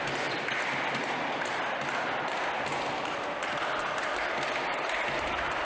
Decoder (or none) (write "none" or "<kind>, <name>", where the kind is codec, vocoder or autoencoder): none